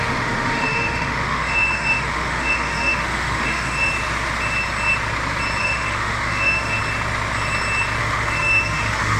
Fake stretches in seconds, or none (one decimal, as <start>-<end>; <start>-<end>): 0.0-3.9; 5.6-6.8; 8.0-9.2